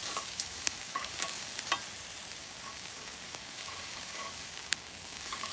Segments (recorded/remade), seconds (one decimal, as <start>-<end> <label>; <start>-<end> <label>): 0.0-1.6 remade; 1.6-2.4 recorded; 2.4-5.5 remade